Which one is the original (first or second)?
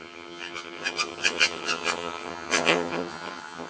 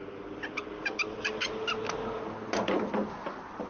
second